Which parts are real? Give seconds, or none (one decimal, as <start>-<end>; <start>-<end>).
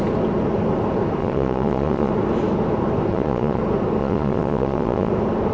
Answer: 0.0-1.2; 2.1-3.1; 3.6-4.0; 5.1-5.5